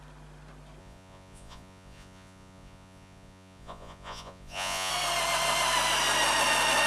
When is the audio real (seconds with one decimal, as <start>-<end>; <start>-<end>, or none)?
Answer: 0.0-0.8; 4.9-6.9